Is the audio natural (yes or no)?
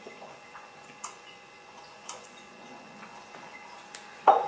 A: no